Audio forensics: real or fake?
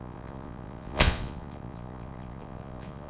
fake